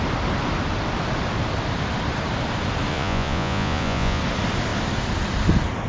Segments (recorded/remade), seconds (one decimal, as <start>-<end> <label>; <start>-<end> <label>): 0.0-2.9 recorded; 2.9-4.2 remade; 4.2-5.9 recorded